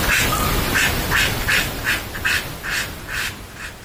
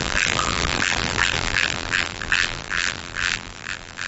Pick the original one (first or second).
first